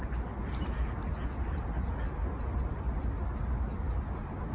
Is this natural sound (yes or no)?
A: yes